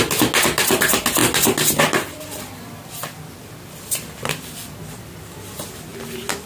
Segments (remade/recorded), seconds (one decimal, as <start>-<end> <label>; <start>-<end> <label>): 0.0-6.5 recorded